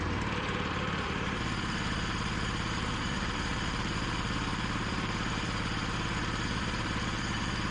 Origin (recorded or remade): remade